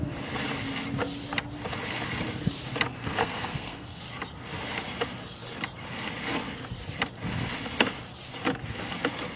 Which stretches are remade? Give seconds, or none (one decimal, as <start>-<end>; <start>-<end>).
3.2-4.0